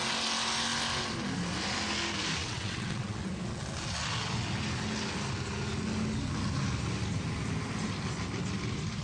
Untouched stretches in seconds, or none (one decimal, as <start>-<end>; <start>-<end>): 0.0-2.4; 3.3-9.0